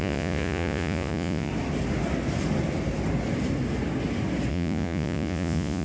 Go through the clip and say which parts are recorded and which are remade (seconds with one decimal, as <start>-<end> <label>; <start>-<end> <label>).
0.0-1.5 remade; 1.5-4.5 recorded; 4.5-5.8 remade